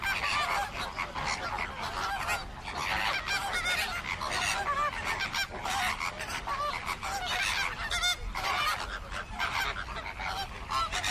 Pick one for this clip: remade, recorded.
recorded